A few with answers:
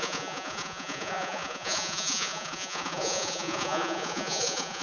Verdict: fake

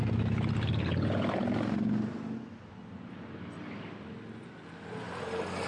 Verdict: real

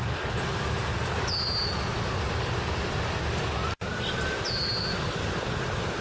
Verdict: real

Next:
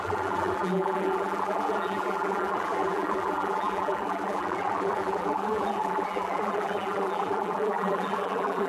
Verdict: fake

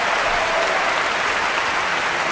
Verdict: real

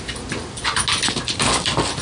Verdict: real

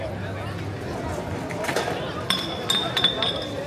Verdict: real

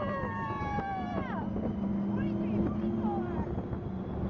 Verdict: real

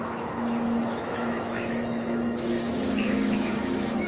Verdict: fake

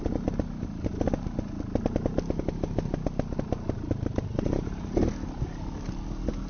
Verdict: real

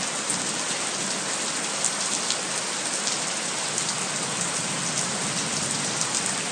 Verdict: real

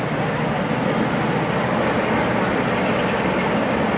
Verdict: real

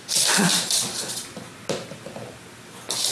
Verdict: real